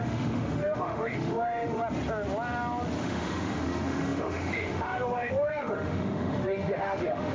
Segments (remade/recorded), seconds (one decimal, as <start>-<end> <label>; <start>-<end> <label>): 0.0-1.8 remade; 1.8-3.0 recorded; 3.0-7.3 remade